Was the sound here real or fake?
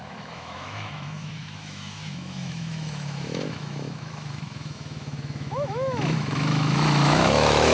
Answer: fake